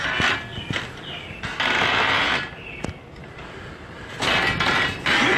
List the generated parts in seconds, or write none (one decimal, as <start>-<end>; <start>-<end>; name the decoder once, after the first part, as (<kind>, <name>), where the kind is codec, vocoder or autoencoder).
none